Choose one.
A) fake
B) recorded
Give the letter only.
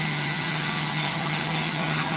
A